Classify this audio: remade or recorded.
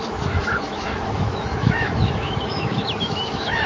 remade